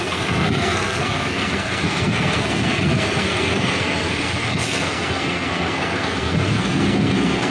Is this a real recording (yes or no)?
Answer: no